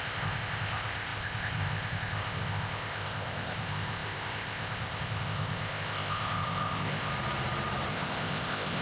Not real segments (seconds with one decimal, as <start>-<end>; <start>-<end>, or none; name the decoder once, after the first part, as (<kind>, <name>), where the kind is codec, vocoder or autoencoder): 0.0-7.1 (codec, ZipCodec); 7.9-8.8